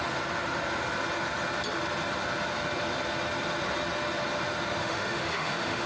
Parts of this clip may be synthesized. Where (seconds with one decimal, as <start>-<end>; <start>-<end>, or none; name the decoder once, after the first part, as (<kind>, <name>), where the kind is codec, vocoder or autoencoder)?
4.8-5.9 (autoencoder, DAC-VAE)